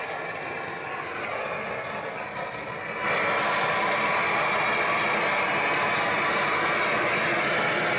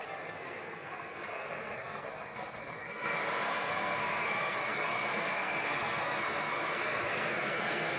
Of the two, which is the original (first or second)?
first